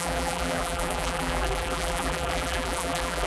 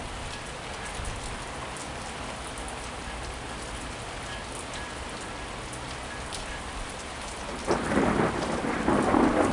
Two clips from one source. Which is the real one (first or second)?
second